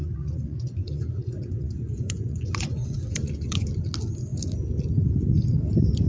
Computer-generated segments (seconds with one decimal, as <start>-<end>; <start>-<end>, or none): 0.0-3.7